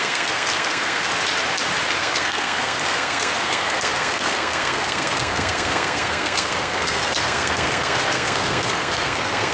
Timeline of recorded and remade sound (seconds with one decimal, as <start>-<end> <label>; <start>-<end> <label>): 0.0-1.1 remade; 1.1-2.0 recorded; 2.0-9.5 remade